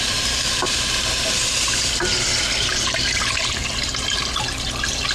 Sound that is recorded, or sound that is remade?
remade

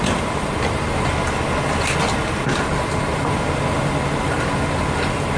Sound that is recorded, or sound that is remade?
recorded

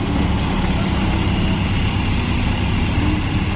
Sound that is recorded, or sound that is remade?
recorded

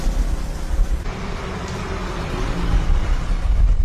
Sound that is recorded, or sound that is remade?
recorded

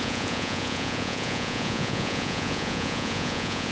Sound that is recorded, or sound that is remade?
remade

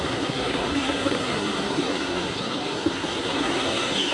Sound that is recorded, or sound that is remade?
remade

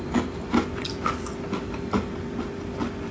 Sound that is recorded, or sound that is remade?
recorded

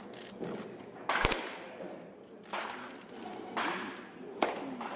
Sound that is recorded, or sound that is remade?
recorded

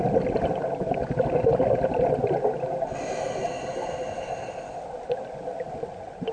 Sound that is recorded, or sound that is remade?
recorded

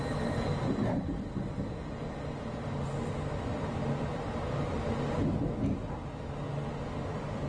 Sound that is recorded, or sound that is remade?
recorded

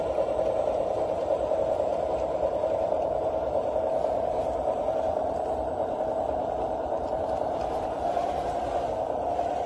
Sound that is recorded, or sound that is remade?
remade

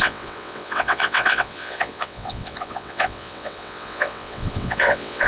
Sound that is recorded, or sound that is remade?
remade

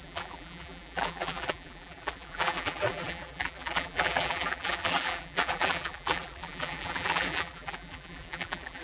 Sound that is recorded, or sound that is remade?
remade